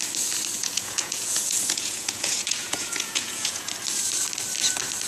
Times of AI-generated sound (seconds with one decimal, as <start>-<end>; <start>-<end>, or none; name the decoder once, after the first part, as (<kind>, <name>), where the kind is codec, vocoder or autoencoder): 0.6-3.7 (vocoder, Vocos)